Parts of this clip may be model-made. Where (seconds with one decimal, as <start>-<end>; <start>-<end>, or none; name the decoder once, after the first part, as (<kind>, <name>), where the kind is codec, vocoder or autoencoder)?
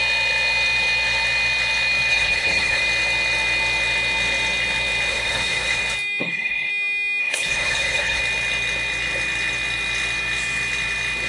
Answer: 2.1-2.8 (codec, HILCodec); 5.1-5.8; 6.2-6.7; 7.2-8.2